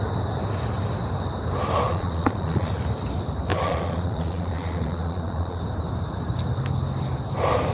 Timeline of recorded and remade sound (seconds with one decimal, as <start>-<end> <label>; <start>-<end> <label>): 0.0-1.9 recorded; 1.9-2.7 remade; 2.7-3.5 recorded; 3.5-5.6 remade; 5.6-7.7 recorded